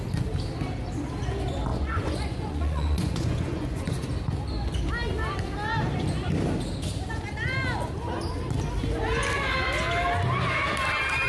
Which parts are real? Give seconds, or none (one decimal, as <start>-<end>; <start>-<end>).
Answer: 0.0-1.7; 4.0-11.3